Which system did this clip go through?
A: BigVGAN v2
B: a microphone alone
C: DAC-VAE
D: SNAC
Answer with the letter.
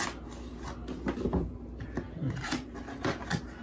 B